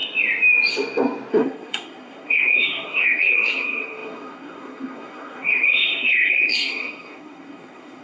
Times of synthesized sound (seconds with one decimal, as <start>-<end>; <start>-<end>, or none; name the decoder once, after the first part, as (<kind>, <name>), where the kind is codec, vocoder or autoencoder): 1.3-8.0 (codec, SNAC)